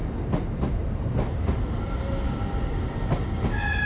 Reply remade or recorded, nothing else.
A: recorded